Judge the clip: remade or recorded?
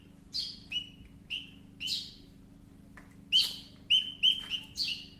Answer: recorded